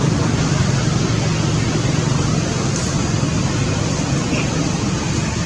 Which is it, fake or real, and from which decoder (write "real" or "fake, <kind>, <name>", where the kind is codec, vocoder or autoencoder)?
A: real